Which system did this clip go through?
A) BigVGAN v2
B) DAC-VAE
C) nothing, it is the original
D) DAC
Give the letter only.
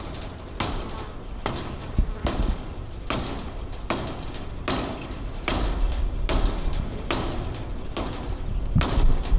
C